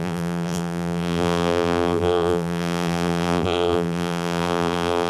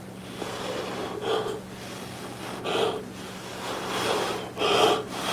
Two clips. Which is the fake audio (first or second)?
first